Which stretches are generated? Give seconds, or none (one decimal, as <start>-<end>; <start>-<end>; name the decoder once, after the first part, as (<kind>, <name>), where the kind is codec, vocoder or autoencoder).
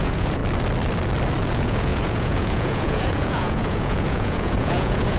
0.0-0.4 (vocoder, Vocos); 1.5-5.2